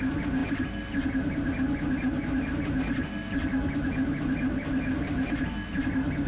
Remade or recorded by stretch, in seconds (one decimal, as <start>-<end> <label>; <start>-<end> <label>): 0.0-6.3 recorded

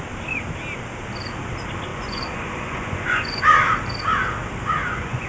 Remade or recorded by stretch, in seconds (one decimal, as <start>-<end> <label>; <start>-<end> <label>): 0.0-1.9 recorded; 1.9-3.4 remade; 3.4-4.8 recorded; 4.8-5.3 remade

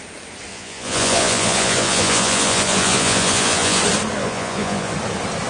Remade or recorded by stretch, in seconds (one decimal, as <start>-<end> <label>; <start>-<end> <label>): 0.0-0.5 recorded; 0.5-3.8 remade; 3.8-4.2 recorded; 4.2-4.9 remade; 4.9-5.5 recorded

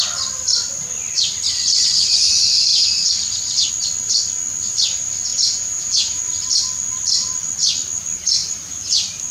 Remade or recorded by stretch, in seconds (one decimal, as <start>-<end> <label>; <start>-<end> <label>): 0.0-5.3 recorded; 5.3-6.2 remade; 6.2-9.3 recorded

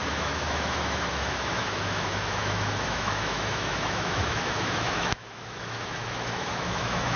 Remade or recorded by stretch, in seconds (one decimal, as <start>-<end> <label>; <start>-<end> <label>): 0.0-7.2 remade

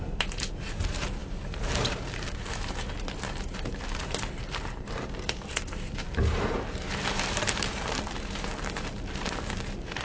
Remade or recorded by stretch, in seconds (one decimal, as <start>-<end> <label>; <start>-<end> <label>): 0.0-10.0 remade

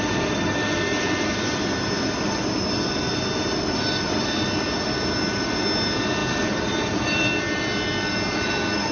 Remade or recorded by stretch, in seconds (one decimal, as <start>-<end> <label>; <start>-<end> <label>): 0.0-8.9 recorded